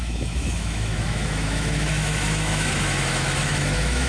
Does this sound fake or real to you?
fake